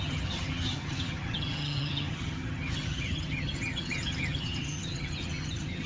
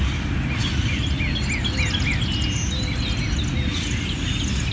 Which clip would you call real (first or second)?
second